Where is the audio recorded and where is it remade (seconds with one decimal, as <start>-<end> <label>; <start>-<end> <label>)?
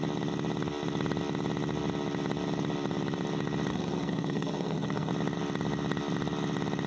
0.0-3.7 recorded; 3.7-5.1 remade; 5.1-6.9 recorded